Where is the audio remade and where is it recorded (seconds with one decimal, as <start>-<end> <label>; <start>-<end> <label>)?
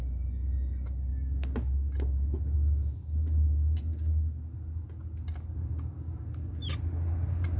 0.0-7.6 recorded